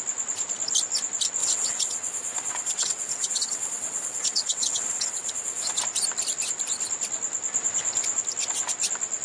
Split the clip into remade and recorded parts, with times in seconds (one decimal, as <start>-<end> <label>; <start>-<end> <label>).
0.0-1.4 recorded; 1.4-5.8 remade; 5.8-9.2 recorded

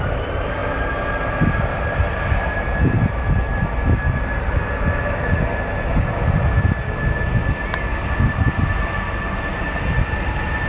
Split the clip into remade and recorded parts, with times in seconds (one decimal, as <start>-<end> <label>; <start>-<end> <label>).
0.0-10.7 recorded

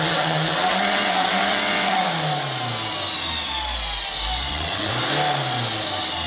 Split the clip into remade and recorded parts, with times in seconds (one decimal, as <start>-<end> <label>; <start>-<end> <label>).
0.0-2.0 remade; 2.0-4.5 recorded; 4.5-4.9 remade; 4.9-6.3 recorded